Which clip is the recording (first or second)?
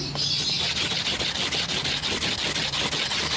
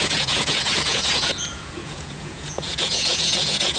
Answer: first